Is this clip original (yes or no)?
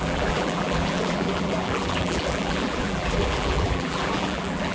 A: no